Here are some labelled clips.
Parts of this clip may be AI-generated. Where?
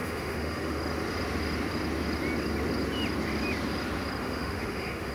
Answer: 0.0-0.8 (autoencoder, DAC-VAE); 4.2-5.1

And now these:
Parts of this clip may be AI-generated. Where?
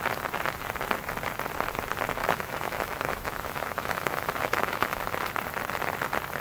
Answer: 2.2-5.0 (autoencoder, DAC-VAE)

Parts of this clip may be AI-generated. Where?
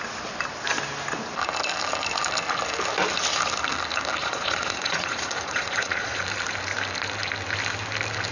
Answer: 4.2-6.2 (vocoder, Vocos)